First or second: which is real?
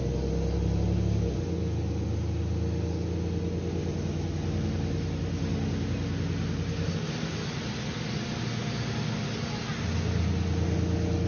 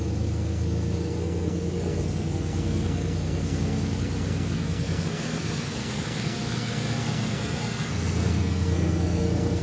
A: first